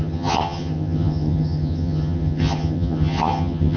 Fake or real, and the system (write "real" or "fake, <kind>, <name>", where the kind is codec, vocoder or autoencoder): fake, vocoder, HiFi-GAN